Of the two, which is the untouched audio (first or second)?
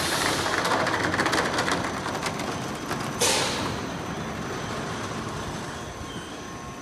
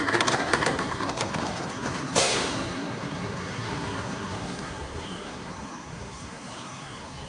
first